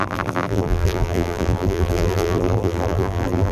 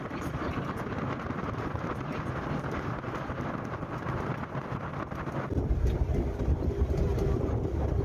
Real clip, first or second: second